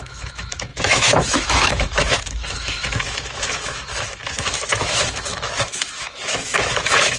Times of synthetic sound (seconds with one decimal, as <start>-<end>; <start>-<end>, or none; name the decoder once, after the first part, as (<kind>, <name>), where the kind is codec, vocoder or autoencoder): 0.0-7.2 (autoencoder, DAC-VAE)